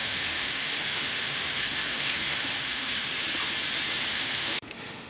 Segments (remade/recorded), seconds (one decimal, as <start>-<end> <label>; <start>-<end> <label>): 0.0-3.1 remade; 3.1-4.1 recorded; 4.1-5.1 remade